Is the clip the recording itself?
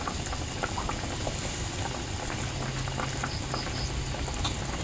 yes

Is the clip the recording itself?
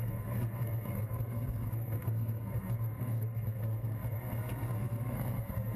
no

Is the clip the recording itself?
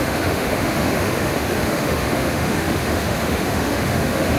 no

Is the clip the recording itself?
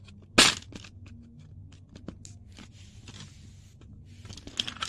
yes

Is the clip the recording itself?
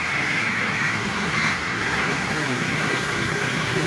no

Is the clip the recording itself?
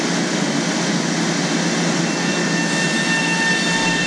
yes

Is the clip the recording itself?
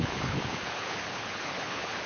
no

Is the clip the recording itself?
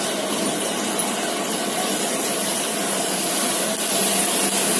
yes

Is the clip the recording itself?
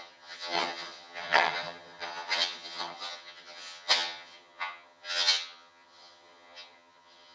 no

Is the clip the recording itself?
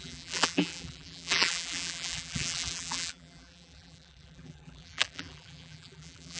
no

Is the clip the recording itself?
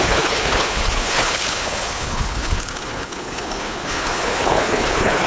no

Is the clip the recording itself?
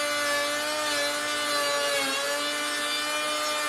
yes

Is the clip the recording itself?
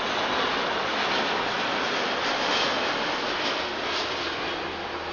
yes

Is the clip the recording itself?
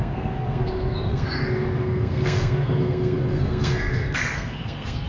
no